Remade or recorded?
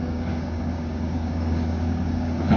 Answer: remade